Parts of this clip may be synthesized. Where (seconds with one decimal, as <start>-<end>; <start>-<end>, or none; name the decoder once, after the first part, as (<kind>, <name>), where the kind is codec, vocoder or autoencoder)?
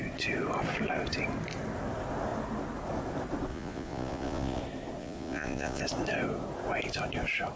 3.5-4.6 (vocoder, Vocos); 5.0-5.8